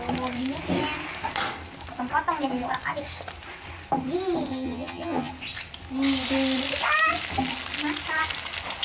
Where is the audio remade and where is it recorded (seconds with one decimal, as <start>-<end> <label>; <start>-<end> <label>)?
0.0-4.5 recorded; 4.5-5.3 remade; 5.3-8.8 recorded